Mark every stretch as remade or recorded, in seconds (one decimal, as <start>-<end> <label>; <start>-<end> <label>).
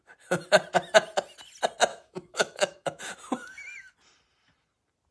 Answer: 0.0-1.9 recorded; 1.9-3.0 remade; 3.0-5.1 recorded